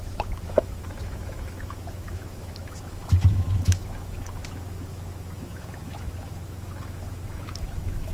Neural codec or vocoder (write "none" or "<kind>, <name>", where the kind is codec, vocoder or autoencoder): autoencoder, DAC-VAE